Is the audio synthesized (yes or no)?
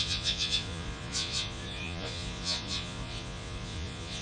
yes